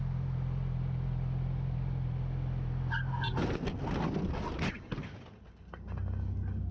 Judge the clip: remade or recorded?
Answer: recorded